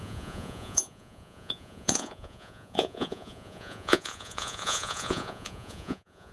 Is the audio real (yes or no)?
no